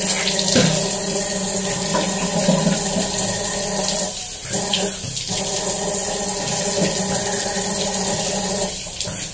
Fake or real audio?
real